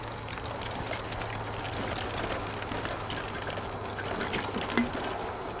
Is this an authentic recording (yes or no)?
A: yes